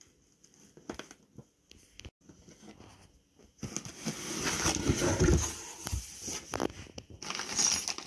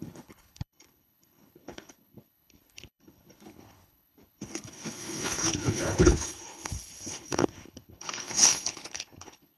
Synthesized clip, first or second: second